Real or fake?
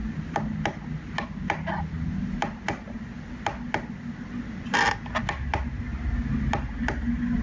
real